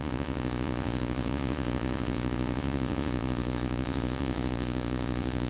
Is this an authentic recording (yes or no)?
no